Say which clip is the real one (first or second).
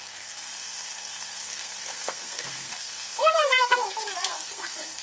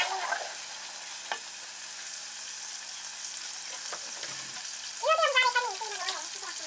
second